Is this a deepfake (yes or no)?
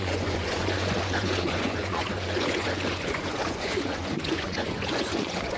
yes